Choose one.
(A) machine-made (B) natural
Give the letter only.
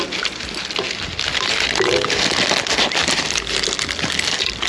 B